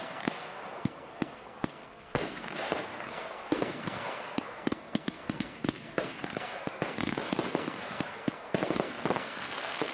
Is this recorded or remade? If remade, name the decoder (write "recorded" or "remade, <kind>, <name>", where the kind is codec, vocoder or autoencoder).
remade, codec, SNAC